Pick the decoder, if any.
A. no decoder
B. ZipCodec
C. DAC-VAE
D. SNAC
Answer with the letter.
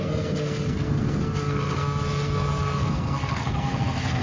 D